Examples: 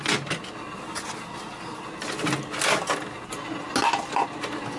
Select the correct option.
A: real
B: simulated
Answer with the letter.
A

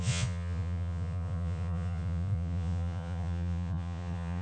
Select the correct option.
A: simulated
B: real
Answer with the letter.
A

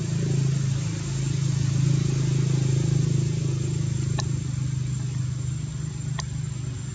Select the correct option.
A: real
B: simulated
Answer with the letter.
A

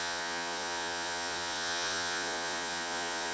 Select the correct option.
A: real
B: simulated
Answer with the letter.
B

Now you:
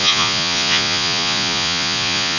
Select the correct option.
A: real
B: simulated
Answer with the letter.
B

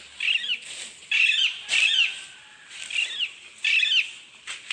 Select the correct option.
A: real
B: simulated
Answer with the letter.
A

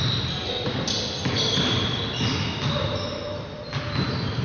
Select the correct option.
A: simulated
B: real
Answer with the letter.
B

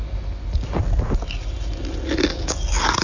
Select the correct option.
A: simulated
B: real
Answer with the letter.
B